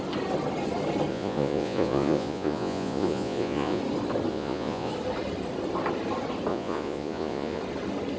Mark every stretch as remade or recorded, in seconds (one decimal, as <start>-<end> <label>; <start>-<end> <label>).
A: 0.0-1.1 recorded; 1.1-3.8 remade; 3.8-4.3 recorded; 4.3-4.9 remade; 4.9-6.5 recorded; 6.5-7.6 remade; 7.6-8.2 recorded